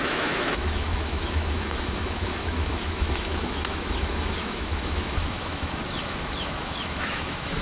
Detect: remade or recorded remade